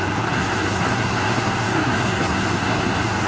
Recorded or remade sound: remade